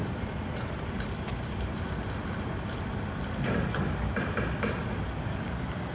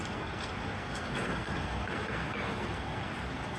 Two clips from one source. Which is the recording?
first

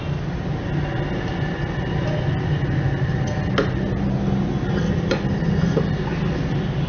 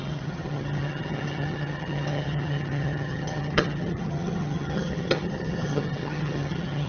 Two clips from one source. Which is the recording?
first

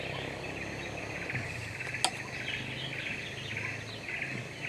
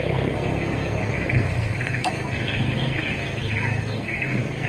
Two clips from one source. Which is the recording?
first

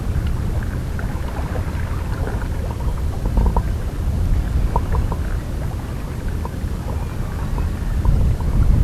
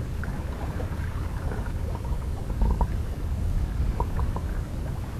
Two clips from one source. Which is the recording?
first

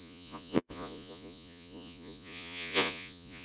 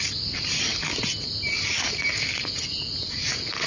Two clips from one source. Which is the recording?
second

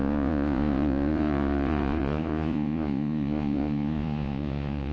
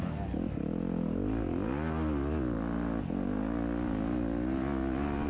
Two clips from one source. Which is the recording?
second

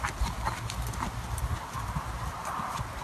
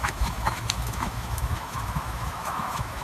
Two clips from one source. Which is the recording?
first